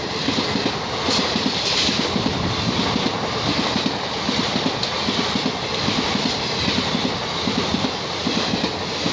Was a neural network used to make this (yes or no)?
no